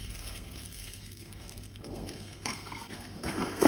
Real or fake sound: fake